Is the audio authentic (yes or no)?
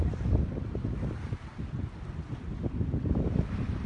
yes